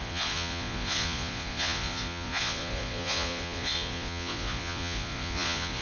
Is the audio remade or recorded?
remade